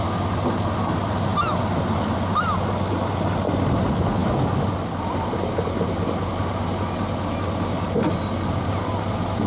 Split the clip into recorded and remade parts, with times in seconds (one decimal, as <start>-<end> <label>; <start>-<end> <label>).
0.0-9.5 recorded